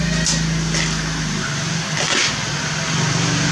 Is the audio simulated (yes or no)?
no